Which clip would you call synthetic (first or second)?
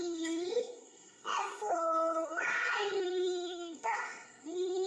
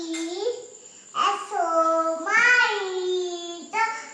first